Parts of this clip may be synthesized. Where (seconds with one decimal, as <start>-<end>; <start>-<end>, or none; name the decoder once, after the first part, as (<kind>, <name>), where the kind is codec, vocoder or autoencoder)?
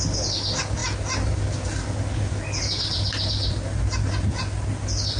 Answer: none